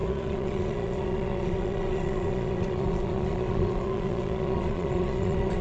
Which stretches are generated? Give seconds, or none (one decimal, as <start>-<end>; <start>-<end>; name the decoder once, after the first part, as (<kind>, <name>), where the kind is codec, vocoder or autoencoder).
0.0-5.6 (vocoder, Vocos)